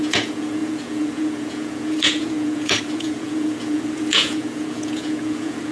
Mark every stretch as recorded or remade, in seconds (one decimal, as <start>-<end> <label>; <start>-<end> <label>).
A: 0.0-5.7 remade